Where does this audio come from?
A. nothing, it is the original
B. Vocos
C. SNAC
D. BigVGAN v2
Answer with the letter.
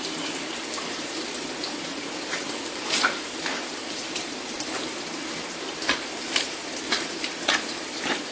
D